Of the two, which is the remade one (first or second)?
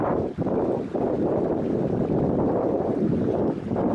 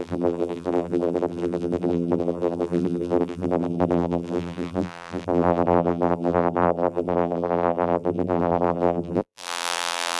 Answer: second